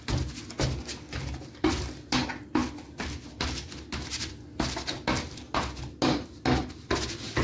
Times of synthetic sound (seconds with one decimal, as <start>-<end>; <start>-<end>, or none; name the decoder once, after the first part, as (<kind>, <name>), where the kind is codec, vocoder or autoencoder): none